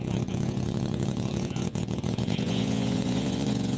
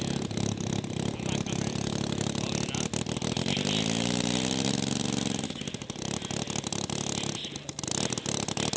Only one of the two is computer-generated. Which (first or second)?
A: first